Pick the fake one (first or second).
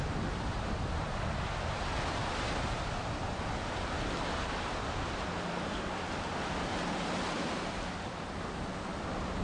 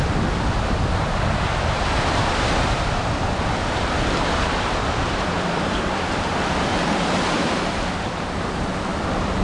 second